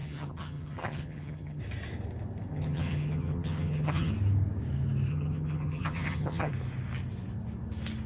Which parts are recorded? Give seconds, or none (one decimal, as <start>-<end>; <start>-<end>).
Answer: 1.6-2.5; 4.1-5.1; 6.5-8.1